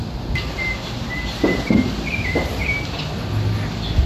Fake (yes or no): no